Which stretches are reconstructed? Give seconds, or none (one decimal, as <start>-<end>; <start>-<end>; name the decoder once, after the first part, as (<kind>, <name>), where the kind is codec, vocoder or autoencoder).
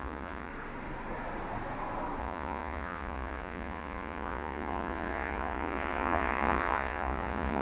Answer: 0.0-0.5 (vocoder, Vocos); 2.2-7.6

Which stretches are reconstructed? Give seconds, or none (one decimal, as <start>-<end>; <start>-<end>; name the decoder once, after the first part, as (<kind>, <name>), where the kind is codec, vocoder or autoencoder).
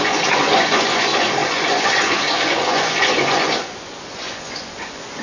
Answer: 0.0-5.2 (vocoder, Vocos)